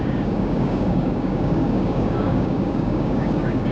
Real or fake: fake